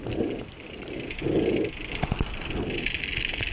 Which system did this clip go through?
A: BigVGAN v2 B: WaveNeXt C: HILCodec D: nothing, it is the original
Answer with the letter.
A